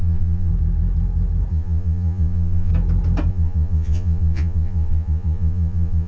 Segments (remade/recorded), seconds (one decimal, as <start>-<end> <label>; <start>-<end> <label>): 0.0-0.5 remade; 0.5-1.5 recorded; 1.5-2.7 remade; 2.7-3.3 recorded; 3.3-6.1 remade